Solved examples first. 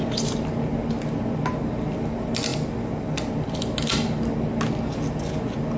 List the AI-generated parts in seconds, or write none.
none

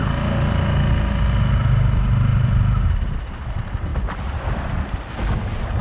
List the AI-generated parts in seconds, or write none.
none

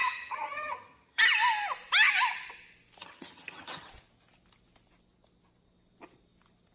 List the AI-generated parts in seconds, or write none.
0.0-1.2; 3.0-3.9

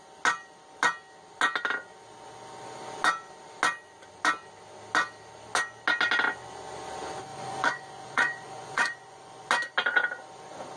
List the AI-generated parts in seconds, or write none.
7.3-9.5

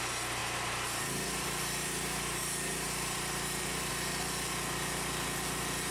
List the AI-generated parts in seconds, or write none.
0.4-3.9

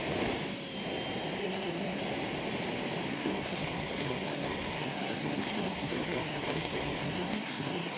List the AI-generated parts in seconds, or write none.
1.4-2.0; 3.1-8.0

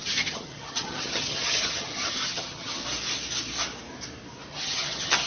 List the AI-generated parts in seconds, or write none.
0.0-2.8; 4.5-5.3